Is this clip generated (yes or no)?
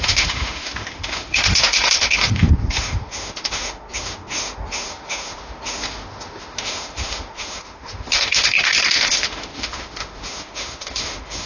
yes